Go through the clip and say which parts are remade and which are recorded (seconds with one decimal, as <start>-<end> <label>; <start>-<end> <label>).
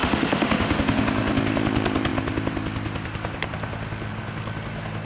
0.0-0.8 remade; 0.8-5.1 recorded